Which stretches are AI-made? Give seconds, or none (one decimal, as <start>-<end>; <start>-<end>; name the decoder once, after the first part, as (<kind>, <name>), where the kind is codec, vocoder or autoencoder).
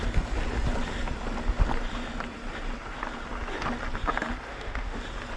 4.5-5.0 (autoencoder, DAC-VAE)